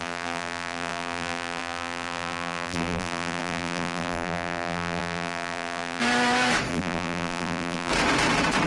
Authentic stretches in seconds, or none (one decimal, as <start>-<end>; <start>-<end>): 6.0-6.7; 7.9-8.7